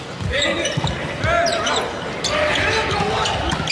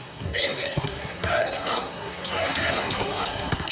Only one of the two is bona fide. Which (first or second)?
first